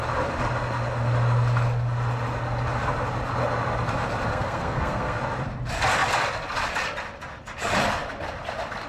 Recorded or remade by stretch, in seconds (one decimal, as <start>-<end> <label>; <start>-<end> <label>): 0.0-4.3 recorded; 4.3-5.2 remade; 5.2-8.9 recorded